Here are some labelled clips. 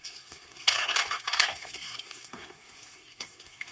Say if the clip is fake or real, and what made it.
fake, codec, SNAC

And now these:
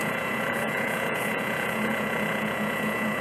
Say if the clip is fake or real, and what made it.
fake, vocoder, Vocos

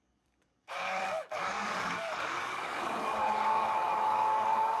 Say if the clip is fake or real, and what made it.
fake, codec, DAC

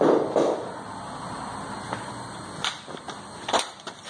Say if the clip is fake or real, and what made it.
real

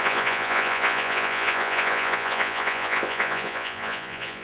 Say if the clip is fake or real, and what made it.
fake, vocoder, Vocos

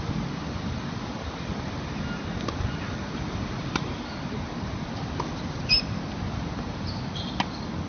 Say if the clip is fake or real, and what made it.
real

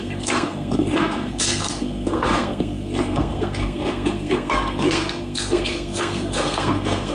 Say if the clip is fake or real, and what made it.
fake, codec, SNAC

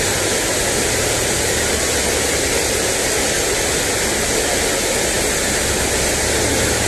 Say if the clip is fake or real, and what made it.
real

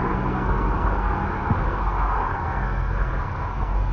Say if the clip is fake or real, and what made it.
fake, codec, SNAC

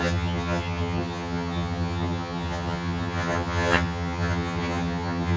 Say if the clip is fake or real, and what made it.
fake, vocoder, HiFi-GAN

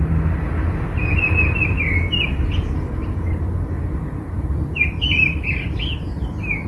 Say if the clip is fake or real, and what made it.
real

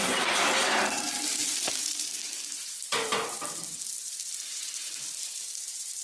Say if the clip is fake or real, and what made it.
fake, vocoder, BigVGAN v2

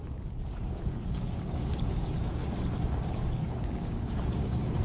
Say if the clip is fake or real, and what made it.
fake, codec, DAC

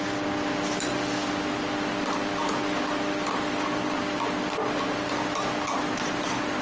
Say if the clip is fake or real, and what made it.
real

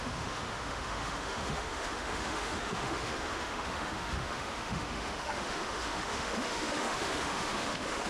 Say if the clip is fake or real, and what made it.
fake, autoencoder, DAC-VAE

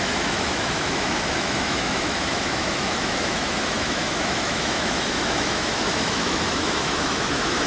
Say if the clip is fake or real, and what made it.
fake, autoencoder, DAC-VAE